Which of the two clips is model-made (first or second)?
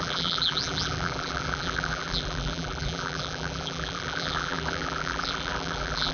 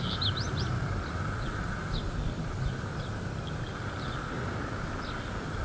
first